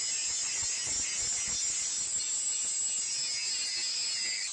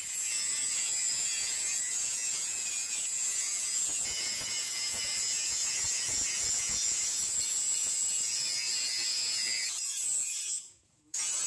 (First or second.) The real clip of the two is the first